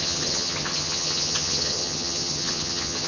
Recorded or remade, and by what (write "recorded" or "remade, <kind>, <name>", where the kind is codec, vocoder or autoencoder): remade, vocoder, HiFi-GAN